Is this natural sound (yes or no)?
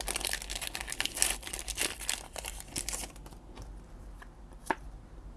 yes